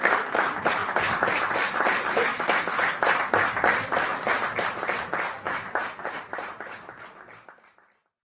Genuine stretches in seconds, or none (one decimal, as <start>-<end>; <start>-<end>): 0.0-0.8; 1.4-2.3; 2.9-4.1; 6.5-8.3